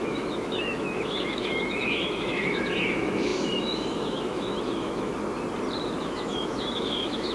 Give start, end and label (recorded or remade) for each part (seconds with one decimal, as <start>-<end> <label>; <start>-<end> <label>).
0.0-5.1 remade; 5.1-6.0 recorded; 6.0-7.3 remade

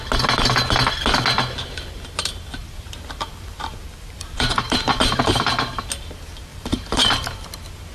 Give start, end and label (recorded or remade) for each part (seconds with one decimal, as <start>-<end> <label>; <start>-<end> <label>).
0.0-2.6 recorded; 2.6-5.8 remade; 5.8-6.5 recorded; 6.5-7.5 remade; 7.5-7.9 recorded